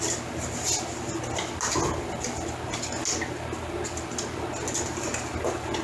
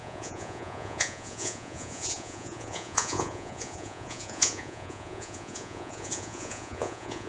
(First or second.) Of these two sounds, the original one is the first